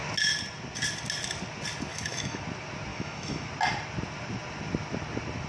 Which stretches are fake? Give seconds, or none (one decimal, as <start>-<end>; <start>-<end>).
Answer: 1.9-2.4; 2.9-3.5